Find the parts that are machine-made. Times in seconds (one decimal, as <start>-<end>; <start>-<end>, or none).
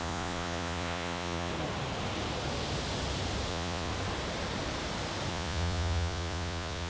0.0-1.5; 3.5-3.9; 5.3-6.9